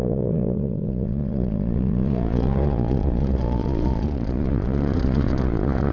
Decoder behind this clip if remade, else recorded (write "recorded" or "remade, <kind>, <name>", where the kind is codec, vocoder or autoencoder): remade, vocoder, Vocos